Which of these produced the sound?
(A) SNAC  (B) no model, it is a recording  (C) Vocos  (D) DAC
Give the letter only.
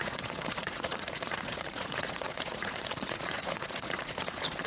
C